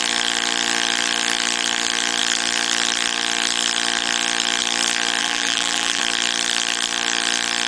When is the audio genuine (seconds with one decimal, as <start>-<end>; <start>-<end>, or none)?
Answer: 0.0-5.2; 6.0-7.7